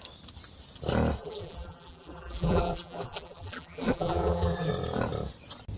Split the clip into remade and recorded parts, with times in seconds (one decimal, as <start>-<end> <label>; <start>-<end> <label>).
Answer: 0.0-1.2 recorded; 1.2-4.7 remade; 4.7-5.8 recorded